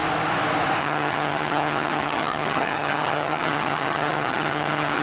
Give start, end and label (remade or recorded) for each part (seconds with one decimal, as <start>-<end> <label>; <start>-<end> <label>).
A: 0.0-0.8 recorded; 0.8-5.0 remade